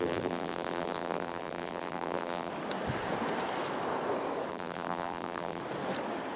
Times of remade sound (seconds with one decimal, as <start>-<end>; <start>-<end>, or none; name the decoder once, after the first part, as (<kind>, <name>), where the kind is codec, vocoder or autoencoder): 0.0-2.5 (vocoder, BigVGAN v2); 4.5-5.6